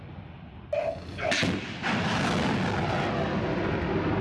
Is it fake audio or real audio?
real